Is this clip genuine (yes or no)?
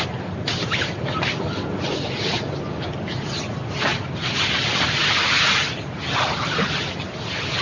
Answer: yes